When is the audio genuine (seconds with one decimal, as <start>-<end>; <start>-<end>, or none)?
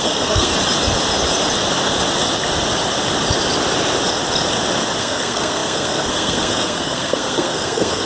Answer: 0.5-5.0